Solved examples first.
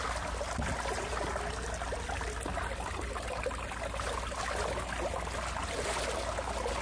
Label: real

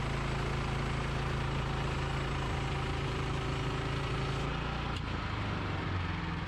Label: real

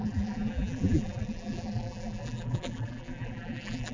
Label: fake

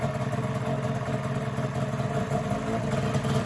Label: real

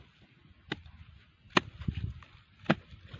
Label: real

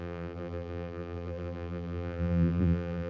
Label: fake